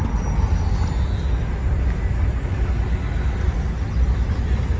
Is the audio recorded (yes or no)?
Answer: yes